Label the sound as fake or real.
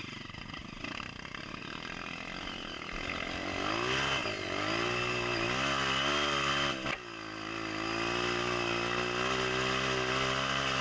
real